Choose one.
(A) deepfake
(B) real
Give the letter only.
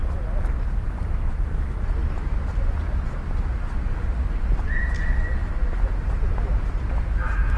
B